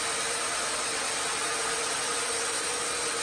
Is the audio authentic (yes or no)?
yes